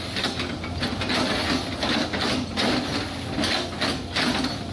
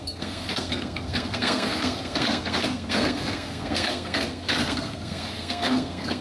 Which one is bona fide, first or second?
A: first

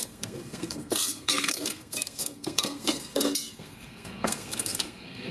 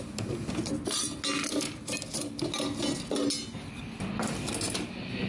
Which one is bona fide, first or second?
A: second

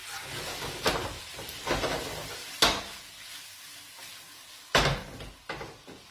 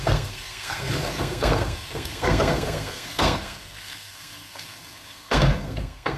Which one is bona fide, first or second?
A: first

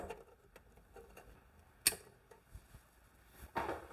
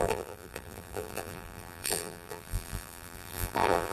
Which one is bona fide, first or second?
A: first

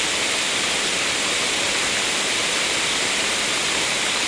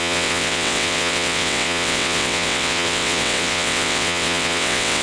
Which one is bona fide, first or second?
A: first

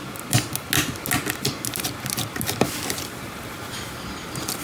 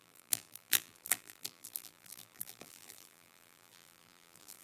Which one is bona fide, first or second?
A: first